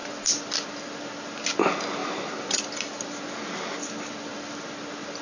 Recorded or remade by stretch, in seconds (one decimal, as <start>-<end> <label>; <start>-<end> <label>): 0.0-5.2 recorded